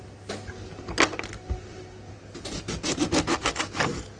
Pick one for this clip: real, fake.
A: real